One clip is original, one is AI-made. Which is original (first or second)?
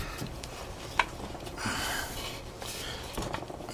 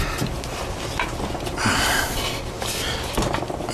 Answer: second